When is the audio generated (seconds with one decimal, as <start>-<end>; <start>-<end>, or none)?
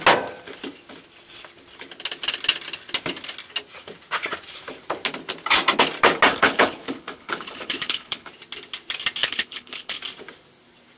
6.3-8.3; 9.2-10.0